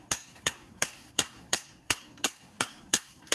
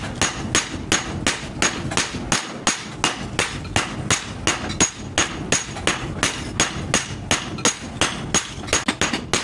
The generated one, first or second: first